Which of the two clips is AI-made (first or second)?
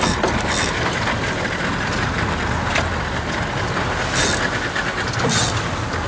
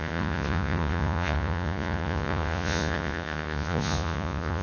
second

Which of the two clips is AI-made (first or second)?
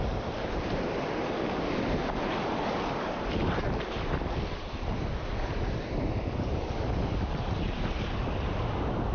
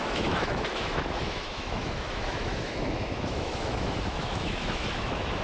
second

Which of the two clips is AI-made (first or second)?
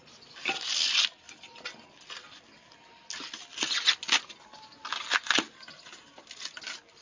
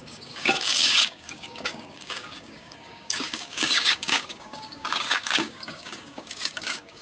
second